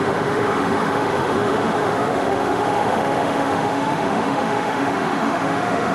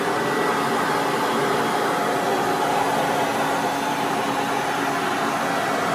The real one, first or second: second